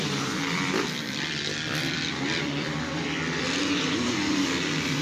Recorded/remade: remade